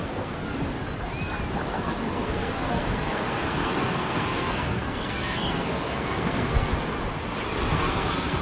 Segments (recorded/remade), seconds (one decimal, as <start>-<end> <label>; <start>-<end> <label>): 0.0-0.4 remade; 0.4-1.7 recorded; 1.7-6.7 remade; 6.7-7.7 recorded; 7.7-8.4 remade